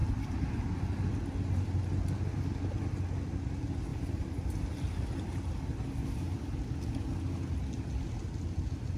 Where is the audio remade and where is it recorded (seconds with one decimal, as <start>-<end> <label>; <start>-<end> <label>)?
0.0-3.9 recorded; 3.9-5.5 remade; 5.5-9.0 recorded